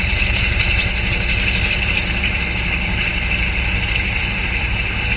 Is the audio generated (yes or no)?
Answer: yes